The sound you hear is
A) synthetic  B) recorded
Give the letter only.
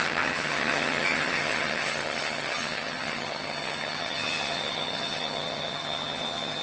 A